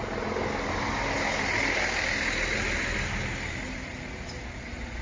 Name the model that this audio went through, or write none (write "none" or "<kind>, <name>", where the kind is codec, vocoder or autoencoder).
none